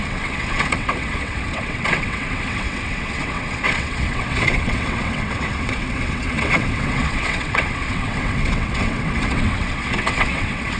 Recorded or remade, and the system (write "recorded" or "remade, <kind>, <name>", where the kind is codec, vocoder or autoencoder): remade, vocoder, WaveNeXt